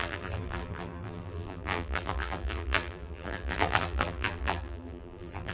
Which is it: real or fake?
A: fake